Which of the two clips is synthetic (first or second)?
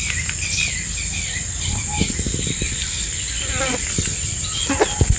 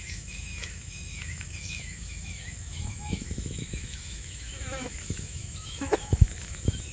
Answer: second